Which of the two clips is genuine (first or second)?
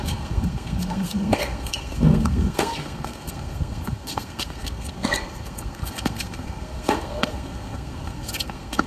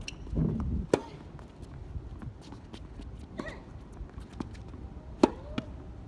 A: second